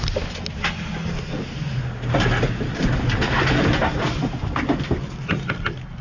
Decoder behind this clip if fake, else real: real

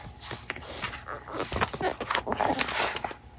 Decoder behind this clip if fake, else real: fake, vocoder, BigVGAN v2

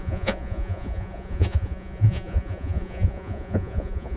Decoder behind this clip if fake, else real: fake, vocoder, Vocos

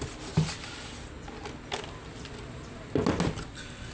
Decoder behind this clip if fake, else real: real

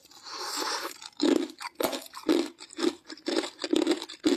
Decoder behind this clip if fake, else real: real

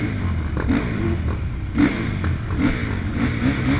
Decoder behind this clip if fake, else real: real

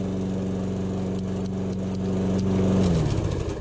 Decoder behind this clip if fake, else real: real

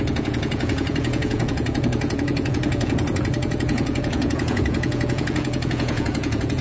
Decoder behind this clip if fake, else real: fake, vocoder, Vocos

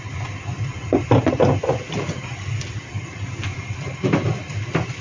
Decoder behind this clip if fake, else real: real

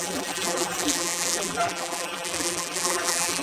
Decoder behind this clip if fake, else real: fake, vocoder, BigVGAN v2